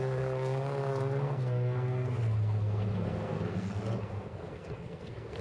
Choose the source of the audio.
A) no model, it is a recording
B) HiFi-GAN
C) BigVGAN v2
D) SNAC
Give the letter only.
D